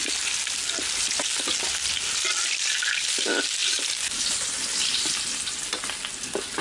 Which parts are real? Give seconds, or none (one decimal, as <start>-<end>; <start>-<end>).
0.0-6.6